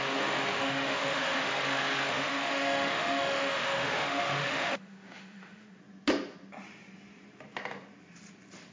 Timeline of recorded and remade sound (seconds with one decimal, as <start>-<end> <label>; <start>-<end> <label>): 0.0-0.5 recorded; 0.5-1.5 remade; 1.5-2.1 recorded; 2.1-5.8 remade; 5.8-8.7 recorded